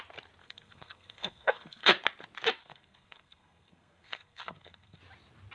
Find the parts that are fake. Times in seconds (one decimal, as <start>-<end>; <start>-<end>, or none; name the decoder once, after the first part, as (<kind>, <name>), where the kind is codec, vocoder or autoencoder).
0.4-1.9 (codec, SNAC); 2.6-5.0